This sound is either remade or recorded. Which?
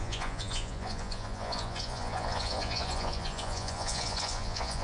remade